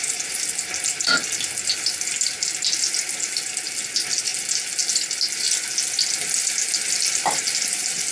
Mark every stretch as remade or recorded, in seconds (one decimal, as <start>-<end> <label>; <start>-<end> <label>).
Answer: 0.0-8.1 recorded